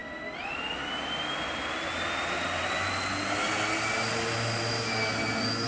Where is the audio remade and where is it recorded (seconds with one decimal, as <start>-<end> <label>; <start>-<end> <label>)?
0.0-5.7 recorded